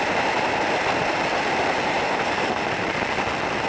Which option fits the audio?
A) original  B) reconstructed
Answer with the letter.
A